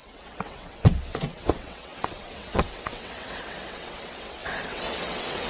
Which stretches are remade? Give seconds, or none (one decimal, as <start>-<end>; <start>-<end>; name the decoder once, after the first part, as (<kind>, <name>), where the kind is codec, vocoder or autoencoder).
0.0-5.5 (vocoder, WaveNeXt)